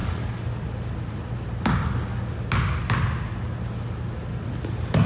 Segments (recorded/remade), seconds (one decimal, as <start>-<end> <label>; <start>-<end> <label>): 0.0-5.1 recorded